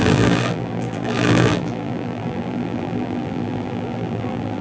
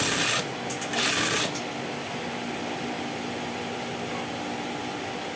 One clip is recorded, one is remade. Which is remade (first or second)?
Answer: first